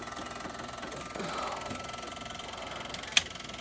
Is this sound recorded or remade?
recorded